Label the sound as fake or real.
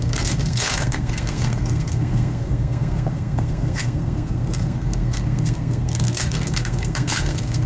fake